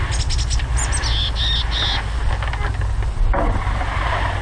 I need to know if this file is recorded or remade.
recorded